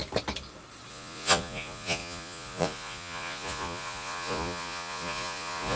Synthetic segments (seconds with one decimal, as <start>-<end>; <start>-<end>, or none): 0.9-5.8